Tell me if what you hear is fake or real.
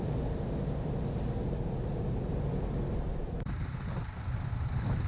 real